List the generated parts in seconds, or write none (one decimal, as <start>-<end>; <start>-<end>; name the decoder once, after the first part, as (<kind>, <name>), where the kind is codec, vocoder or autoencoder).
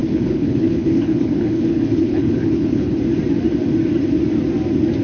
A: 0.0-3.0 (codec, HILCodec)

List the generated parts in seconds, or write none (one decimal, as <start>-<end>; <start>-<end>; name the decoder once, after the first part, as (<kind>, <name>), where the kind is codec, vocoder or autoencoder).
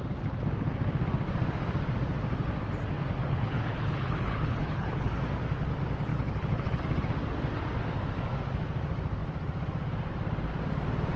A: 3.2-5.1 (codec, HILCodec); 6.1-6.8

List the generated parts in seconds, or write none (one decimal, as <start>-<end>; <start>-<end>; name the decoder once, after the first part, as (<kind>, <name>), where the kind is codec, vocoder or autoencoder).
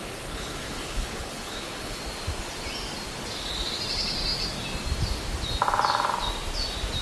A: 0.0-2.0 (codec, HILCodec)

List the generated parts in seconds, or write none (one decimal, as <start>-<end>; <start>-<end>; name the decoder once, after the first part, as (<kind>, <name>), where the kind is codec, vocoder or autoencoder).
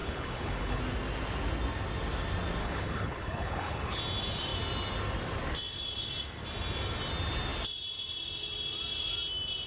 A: 0.0-0.8 (codec, HILCodec); 2.6-4.0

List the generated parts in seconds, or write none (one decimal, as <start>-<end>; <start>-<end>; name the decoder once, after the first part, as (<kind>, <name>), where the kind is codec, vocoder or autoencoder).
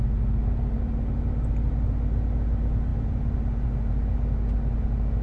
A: none